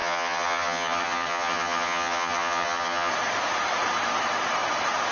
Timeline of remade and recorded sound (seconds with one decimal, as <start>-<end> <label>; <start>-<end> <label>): 0.0-3.1 remade; 3.1-5.1 recorded